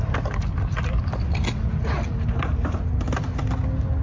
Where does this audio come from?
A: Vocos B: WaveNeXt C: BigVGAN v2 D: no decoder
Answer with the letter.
D